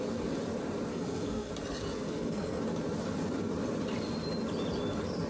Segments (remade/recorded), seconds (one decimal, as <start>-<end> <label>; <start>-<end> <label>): 0.0-0.9 recorded; 0.9-1.5 remade; 1.5-1.9 recorded; 1.9-2.6 remade; 2.6-5.3 recorded